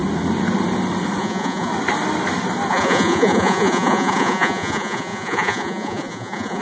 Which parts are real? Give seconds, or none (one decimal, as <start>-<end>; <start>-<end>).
0.0-1.2; 1.7-2.7